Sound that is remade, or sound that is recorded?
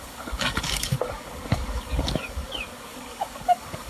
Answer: remade